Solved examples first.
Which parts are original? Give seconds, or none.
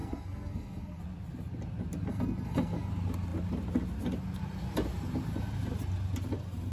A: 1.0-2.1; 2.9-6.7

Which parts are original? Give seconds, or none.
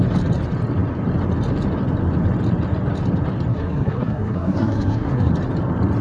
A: 0.0-3.5; 5.3-6.0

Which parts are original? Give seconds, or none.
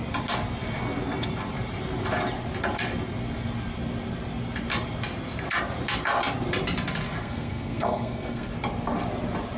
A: 0.0-7.2; 8.5-9.6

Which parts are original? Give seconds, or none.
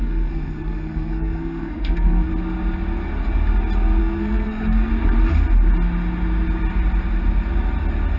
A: 2.3-4.0; 4.9-8.2